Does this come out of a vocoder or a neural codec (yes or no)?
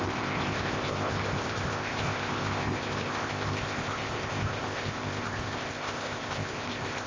yes